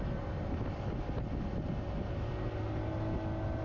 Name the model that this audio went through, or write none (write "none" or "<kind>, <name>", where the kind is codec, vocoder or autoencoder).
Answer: none